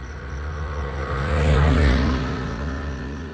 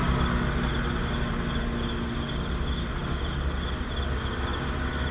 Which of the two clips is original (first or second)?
second